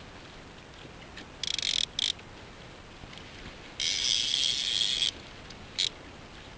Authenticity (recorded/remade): recorded